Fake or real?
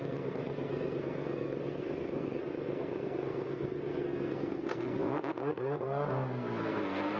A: fake